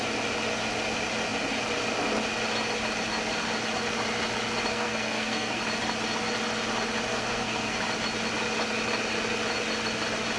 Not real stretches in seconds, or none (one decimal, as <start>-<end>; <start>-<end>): 4.7-5.6; 7.1-7.8

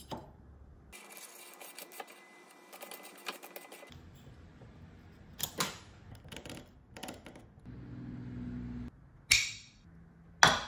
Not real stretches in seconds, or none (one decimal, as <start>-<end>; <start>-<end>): none

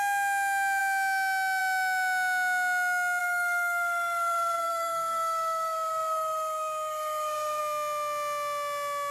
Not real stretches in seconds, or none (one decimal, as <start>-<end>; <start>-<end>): 3.2-7.6

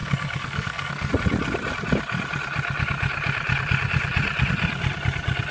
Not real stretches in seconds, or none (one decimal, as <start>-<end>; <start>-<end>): 0.0-1.1